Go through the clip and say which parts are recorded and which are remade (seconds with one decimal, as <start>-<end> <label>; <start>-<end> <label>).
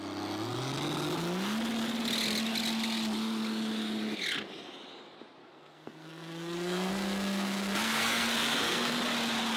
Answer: 0.0-5.4 recorded; 5.4-9.0 remade; 9.0-9.6 recorded